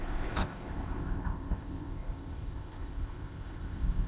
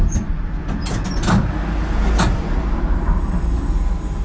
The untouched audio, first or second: second